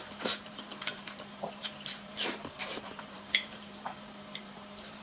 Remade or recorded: remade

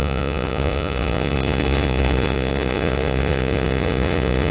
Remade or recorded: remade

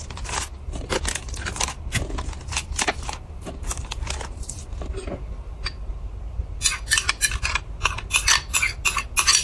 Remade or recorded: recorded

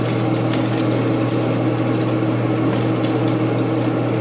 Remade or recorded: recorded